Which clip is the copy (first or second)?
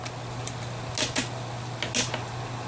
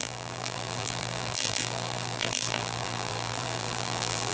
second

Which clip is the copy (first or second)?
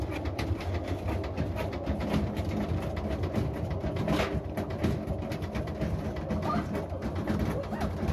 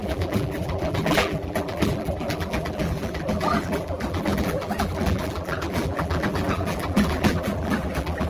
second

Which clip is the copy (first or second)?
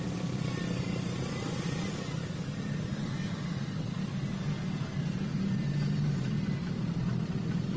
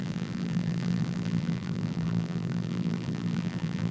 second